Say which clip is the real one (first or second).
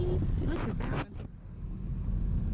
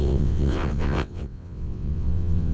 first